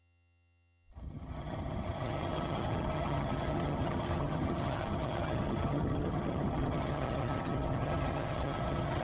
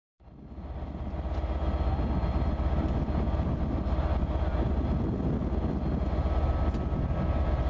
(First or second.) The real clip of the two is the second